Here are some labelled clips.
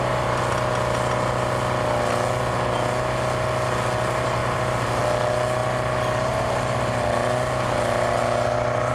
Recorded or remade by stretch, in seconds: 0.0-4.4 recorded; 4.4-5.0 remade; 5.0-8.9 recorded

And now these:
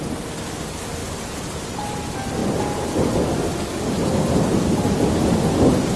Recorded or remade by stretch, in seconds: 0.0-6.0 recorded

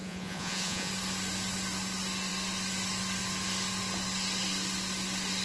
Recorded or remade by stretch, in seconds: 0.0-0.9 remade; 0.9-5.4 recorded